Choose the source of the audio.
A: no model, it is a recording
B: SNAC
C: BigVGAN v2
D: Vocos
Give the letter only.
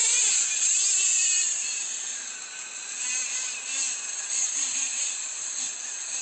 C